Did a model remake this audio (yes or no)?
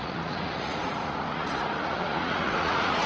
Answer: yes